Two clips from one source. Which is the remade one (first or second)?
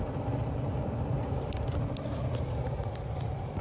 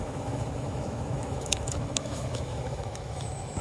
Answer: second